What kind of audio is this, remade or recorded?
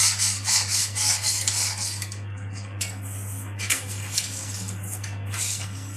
remade